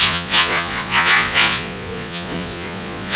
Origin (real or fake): fake